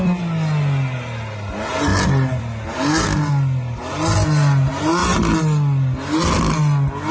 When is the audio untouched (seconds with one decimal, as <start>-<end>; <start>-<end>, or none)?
0.0-7.1